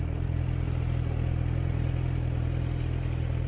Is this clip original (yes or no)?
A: yes